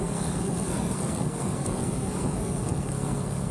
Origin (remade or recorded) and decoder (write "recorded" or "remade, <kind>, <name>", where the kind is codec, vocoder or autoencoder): remade, codec, SNAC